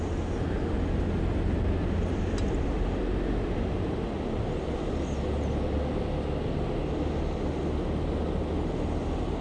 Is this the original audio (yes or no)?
yes